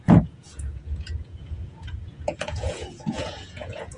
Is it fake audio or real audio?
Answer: fake